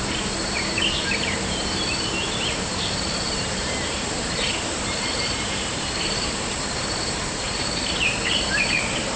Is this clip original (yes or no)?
no